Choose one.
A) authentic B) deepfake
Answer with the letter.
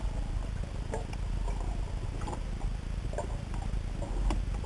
A